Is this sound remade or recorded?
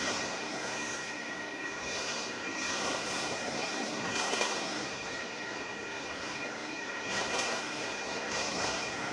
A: remade